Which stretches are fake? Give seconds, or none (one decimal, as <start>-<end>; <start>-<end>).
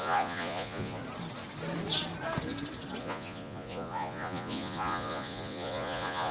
0.0-1.0; 3.0-6.3